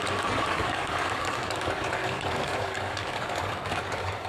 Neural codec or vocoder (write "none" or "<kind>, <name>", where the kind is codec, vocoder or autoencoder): codec, DAC